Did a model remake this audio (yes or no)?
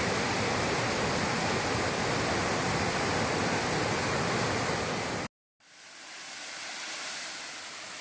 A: no